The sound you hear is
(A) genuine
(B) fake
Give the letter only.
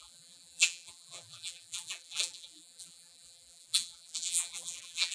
B